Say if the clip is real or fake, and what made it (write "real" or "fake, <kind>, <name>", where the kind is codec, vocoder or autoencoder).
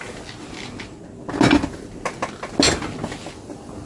real